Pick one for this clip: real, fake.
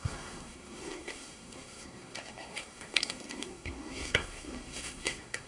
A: fake